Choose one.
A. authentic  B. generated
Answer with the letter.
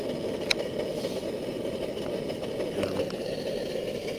A